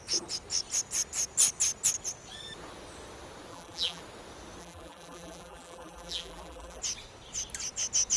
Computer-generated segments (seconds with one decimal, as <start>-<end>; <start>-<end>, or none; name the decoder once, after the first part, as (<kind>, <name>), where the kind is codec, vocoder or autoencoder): 3.5-4.0 (vocoder, BigVGAN v2); 4.6-6.8